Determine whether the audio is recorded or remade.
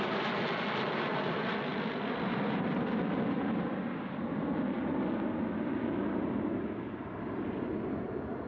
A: recorded